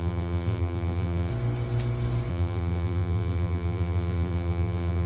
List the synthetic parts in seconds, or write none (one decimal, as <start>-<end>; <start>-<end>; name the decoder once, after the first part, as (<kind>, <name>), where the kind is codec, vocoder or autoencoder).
0.0-1.3 (vocoder, BigVGAN v2); 2.3-5.1